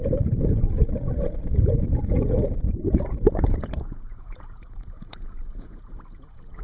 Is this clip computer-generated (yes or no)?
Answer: yes